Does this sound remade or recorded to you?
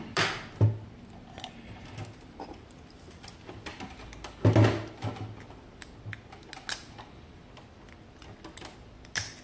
recorded